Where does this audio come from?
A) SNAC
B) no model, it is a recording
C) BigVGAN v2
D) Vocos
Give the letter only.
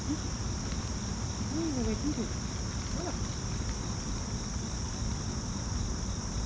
B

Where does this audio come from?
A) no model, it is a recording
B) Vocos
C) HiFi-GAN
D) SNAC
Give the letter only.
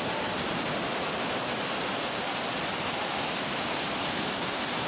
A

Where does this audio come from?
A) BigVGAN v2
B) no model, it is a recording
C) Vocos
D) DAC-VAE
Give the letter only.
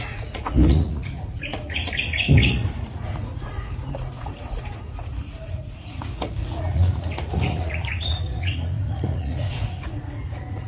C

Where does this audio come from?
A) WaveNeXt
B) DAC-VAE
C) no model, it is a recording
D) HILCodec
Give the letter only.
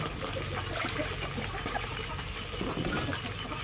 C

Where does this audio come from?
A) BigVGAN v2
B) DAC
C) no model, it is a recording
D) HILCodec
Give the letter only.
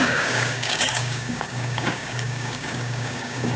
B